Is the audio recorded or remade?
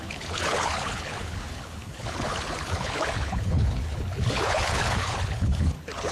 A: remade